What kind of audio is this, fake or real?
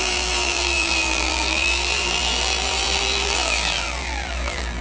fake